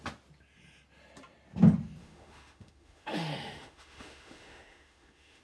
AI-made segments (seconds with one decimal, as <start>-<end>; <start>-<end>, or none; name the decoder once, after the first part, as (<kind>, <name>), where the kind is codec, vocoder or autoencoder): 2.0-5.4 (autoencoder, DAC-VAE)